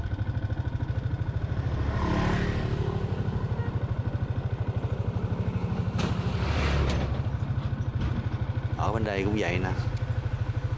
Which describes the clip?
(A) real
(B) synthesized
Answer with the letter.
A